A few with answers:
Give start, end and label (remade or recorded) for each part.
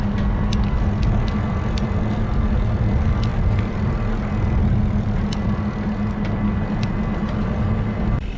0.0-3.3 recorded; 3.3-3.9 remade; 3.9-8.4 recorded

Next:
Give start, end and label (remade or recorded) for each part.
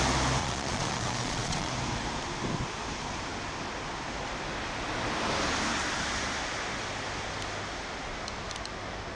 0.0-0.4 recorded; 0.4-1.7 remade; 1.7-9.2 recorded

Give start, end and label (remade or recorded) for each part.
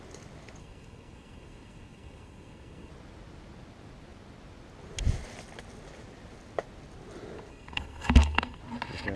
0.0-0.6 recorded; 0.6-2.9 remade; 2.9-7.5 recorded; 7.5-8.6 remade; 8.6-9.2 recorded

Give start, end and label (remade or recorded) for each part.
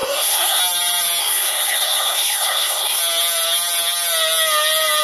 0.0-0.6 remade; 0.6-1.2 recorded; 1.2-3.0 remade; 3.0-5.0 recorded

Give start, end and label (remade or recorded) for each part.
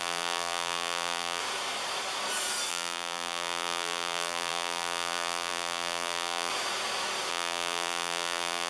0.0-1.4 remade; 1.4-2.7 recorded; 2.7-6.5 remade; 6.5-7.3 recorded; 7.3-8.7 remade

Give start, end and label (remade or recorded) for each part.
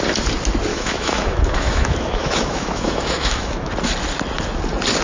0.0-0.7 recorded; 0.7-3.7 remade; 3.7-5.0 recorded